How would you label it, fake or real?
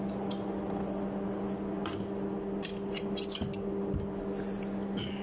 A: real